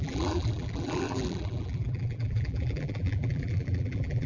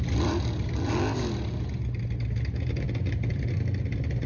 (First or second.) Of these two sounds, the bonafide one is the second